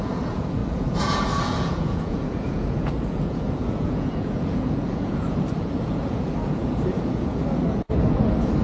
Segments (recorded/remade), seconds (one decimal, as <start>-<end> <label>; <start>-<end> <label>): 0.0-8.6 remade